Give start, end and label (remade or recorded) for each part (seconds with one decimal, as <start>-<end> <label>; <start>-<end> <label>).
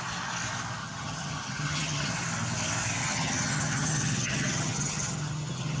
0.0-0.8 recorded; 0.8-2.1 remade; 2.1-3.0 recorded; 3.0-5.8 remade